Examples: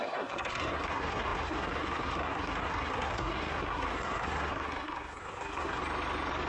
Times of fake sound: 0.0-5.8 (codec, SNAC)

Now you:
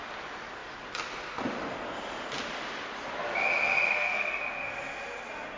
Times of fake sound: 3.9-4.4 (codec, SNAC)

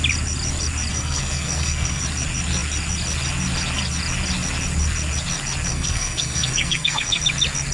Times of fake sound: 0.9-2.0 (codec, SNAC); 5.7-7.2

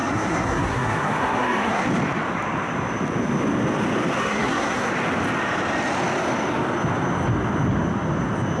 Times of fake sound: 0.0-1.8 (codec, SNAC); 4.2-4.9